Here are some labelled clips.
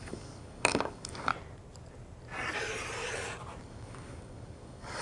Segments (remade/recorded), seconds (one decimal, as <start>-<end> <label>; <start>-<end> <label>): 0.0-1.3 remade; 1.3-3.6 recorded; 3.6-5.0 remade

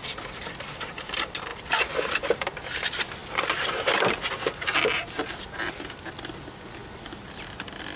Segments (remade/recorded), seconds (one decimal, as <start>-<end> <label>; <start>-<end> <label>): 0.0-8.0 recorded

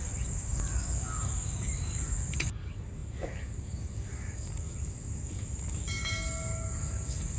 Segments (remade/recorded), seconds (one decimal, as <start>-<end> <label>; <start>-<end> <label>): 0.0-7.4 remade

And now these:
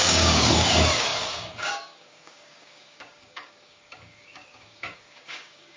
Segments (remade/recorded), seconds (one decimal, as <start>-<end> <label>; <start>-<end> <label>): 0.0-5.8 remade